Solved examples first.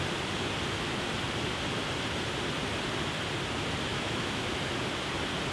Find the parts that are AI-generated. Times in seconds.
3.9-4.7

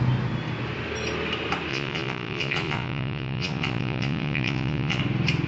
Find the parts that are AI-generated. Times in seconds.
1.7-5.0

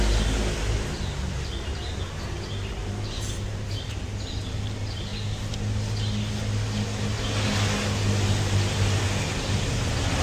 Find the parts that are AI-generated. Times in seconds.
2.8-3.9

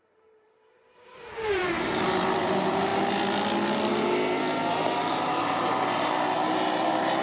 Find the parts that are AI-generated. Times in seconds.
0.0-2.9; 5.1-7.2

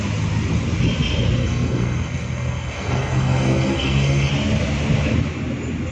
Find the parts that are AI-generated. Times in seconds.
1.4-4.3

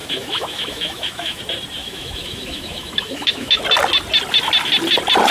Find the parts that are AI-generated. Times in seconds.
0.0-1.4; 1.8-3.6